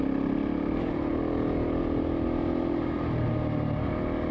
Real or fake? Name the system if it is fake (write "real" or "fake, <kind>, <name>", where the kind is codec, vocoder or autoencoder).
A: real